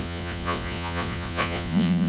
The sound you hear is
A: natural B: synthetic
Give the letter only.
B